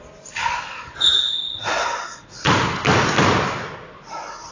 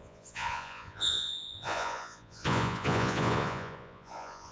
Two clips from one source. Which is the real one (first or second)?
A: first